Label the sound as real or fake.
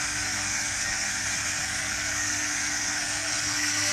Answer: fake